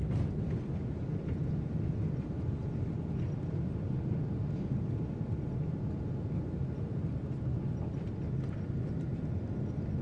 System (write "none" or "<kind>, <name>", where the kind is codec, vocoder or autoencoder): none